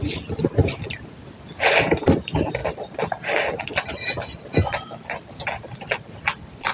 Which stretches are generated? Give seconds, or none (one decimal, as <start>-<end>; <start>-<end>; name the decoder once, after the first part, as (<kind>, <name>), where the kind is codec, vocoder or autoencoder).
none